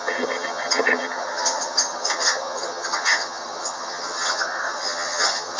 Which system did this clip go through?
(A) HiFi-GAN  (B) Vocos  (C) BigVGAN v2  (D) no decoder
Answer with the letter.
A